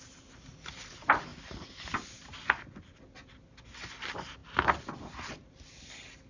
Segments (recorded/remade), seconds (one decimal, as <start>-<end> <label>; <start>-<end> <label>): 0.0-6.3 recorded